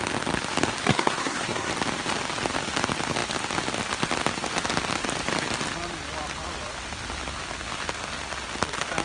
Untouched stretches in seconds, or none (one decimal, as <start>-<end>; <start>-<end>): 0.0-0.8; 1.7-9.0